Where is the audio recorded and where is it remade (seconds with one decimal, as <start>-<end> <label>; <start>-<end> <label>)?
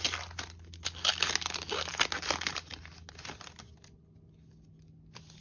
0.0-5.4 recorded